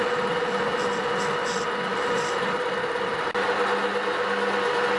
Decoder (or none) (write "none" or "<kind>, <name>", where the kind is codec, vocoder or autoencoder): none